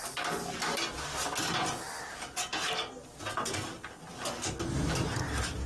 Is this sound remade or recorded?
recorded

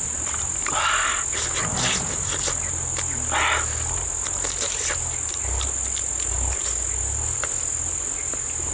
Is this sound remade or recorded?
recorded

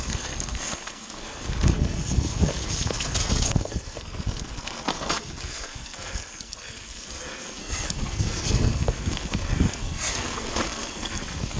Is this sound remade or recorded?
remade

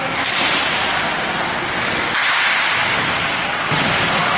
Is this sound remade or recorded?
recorded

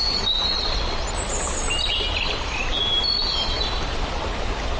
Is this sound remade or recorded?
recorded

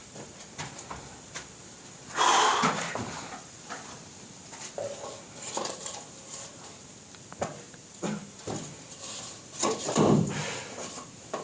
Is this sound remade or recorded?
remade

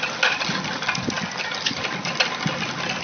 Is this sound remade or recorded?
recorded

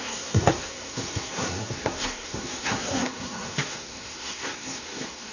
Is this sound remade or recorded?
remade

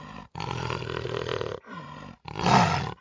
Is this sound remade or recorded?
recorded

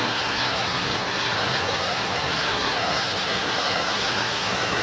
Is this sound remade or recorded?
remade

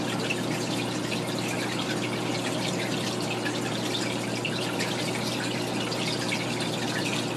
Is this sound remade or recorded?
recorded